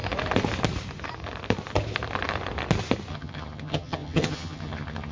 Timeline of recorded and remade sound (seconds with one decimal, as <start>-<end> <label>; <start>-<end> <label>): 0.0-3.1 recorded; 3.1-5.1 remade